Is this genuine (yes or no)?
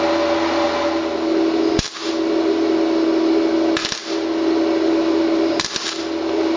yes